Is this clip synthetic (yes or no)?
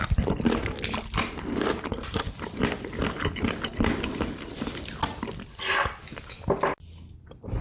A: no